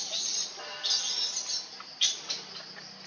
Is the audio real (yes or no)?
yes